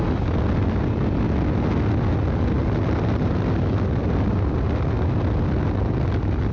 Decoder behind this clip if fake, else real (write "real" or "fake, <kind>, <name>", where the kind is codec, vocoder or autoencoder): real